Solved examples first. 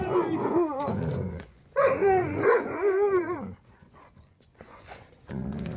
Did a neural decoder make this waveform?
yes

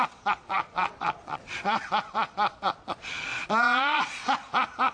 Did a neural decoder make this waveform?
yes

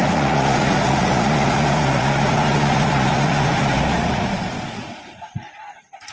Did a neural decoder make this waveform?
yes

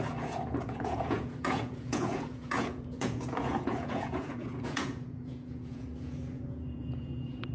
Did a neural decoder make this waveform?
yes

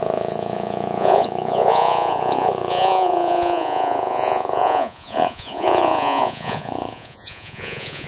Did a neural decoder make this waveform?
yes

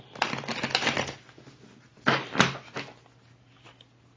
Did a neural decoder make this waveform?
no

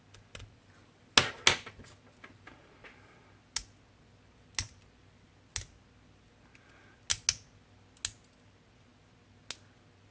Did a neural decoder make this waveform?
no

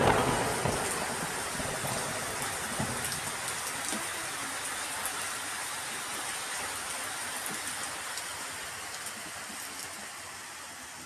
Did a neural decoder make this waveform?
no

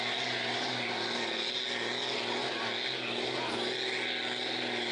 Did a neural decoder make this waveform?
no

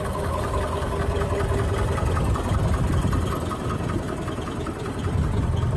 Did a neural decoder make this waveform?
no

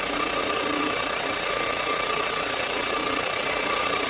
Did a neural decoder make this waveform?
yes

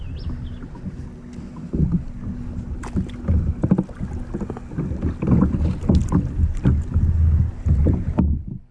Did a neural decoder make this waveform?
no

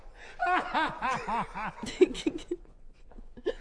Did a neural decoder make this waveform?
yes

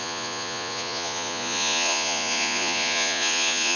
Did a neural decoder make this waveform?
yes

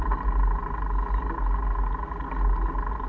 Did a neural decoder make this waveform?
no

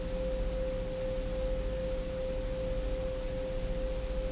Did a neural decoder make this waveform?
no